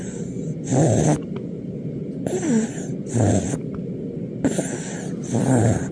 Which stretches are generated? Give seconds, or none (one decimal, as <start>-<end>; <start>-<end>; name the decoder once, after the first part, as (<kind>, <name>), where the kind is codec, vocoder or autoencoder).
none